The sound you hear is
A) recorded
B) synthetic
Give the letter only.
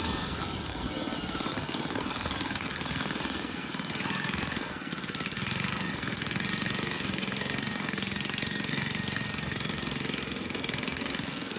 B